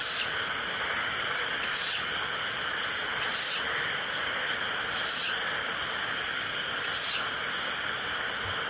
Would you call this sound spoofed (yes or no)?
no